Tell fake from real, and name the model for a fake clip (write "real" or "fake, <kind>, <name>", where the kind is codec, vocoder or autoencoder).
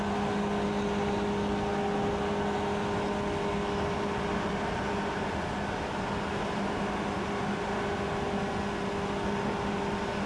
real